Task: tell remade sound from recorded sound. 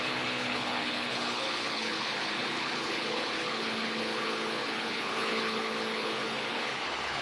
remade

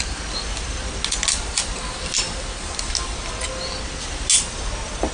recorded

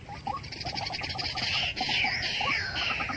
recorded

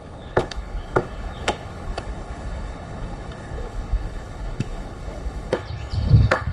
remade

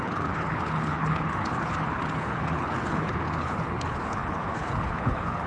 remade